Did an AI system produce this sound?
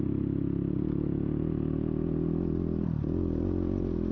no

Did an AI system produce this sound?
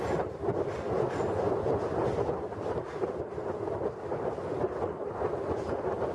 no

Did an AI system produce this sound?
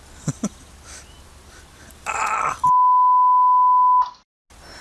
no